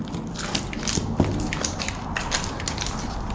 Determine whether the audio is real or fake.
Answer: real